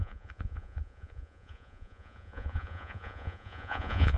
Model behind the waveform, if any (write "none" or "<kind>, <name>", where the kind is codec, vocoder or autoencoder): vocoder, Vocos